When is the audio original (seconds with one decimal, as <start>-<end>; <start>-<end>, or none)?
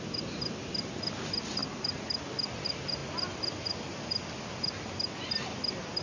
0.0-6.0